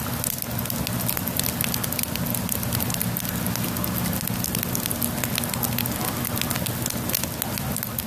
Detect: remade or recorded recorded